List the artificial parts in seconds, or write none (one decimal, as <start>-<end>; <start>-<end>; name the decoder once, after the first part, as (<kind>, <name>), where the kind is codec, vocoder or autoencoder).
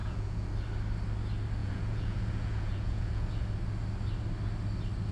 0.0-0.5 (vocoder, Vocos); 1.6-3.3